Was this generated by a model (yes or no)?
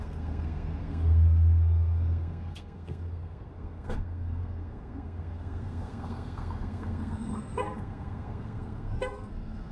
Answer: yes